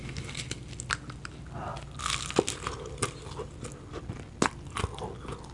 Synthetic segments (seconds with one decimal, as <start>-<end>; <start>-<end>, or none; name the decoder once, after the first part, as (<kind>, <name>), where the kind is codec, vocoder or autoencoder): none